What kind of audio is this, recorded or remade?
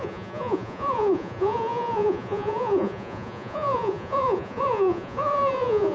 remade